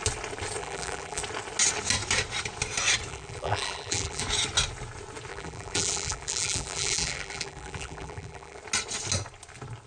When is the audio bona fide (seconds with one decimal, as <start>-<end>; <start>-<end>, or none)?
0.0-0.6; 1.2-3.1; 4.2-5.3; 8.6-9.9